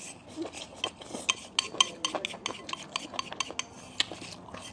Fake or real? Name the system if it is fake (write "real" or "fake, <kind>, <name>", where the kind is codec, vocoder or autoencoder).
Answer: real